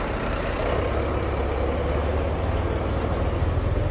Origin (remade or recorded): recorded